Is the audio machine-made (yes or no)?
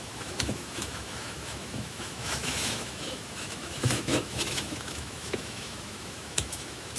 yes